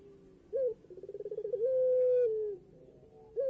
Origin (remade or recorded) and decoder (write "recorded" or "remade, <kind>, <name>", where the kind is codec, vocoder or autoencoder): recorded